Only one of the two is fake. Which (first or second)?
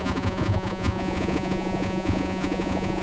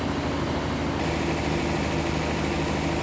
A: first